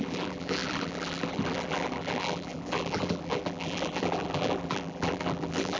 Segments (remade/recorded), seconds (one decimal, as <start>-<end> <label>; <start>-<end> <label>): 0.0-5.8 remade